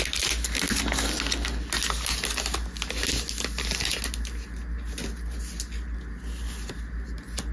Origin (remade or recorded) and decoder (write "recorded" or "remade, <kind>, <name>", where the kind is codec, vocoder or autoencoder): recorded